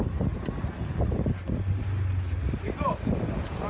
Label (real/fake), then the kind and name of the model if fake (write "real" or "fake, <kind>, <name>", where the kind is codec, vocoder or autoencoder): real